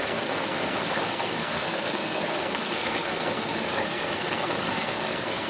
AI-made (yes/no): yes